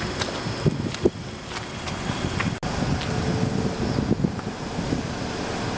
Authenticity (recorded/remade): recorded